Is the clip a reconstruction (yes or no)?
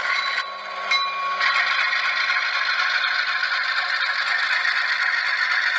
no